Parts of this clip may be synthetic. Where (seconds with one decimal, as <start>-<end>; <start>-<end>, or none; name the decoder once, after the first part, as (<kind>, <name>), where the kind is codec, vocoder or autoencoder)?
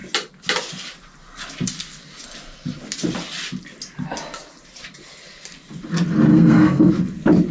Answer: 6.3-6.9 (codec, SNAC)